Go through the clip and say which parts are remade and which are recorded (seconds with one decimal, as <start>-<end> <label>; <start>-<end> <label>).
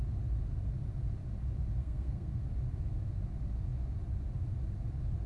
0.0-1.8 recorded; 1.8-2.4 remade; 2.4-5.3 recorded